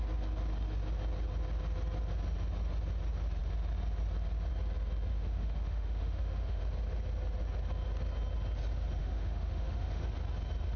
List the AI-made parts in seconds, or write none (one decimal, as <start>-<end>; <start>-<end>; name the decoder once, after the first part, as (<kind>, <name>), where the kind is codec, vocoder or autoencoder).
5.1-6.6 (autoencoder, DAC-VAE); 9.0-10.0